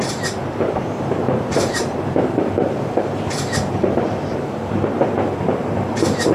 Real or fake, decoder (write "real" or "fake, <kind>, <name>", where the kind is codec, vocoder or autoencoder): fake, vocoder, BigVGAN v2